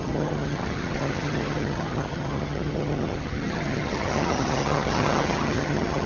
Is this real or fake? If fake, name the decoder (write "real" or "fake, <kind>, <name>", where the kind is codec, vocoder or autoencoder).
fake, vocoder, HiFi-GAN